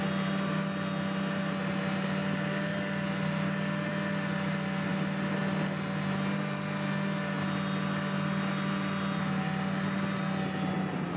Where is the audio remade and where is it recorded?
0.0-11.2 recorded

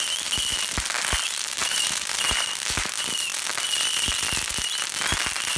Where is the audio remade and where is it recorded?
0.0-1.6 recorded; 1.6-2.2 remade; 2.2-5.6 recorded

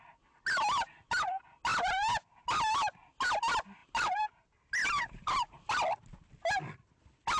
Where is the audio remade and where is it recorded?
0.0-3.8 recorded; 3.8-4.3 remade; 4.3-4.8 recorded; 4.8-5.8 remade; 5.8-7.4 recorded

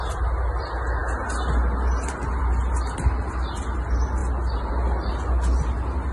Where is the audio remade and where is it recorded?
0.0-6.1 recorded

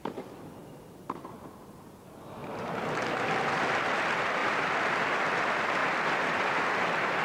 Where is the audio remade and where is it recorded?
0.0-7.2 recorded

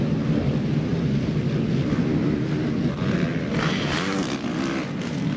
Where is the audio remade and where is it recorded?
0.0-5.4 recorded

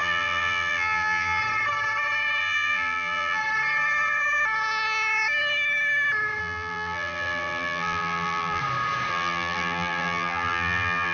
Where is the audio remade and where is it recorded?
0.0-1.4 remade; 1.4-2.4 recorded; 2.4-3.4 remade; 3.4-6.4 recorded; 6.4-8.6 remade; 8.6-9.1 recorded; 9.1-11.1 remade